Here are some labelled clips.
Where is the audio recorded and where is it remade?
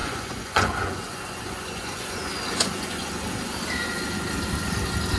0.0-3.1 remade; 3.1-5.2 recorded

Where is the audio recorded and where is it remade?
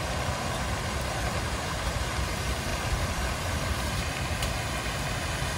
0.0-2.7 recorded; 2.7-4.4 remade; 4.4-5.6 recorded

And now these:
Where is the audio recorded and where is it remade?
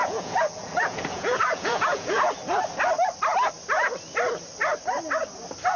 0.0-2.3 remade; 2.3-5.8 recorded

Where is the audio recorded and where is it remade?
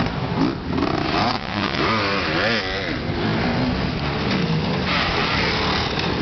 0.0-1.3 recorded; 1.3-1.8 remade; 1.8-6.2 recorded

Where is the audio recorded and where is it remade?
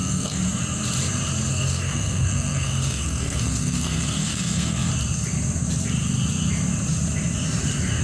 0.0-0.4 remade; 0.4-1.5 recorded; 1.5-4.9 remade; 4.9-8.0 recorded